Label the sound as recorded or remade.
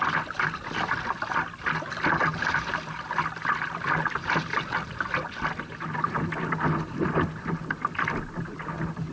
recorded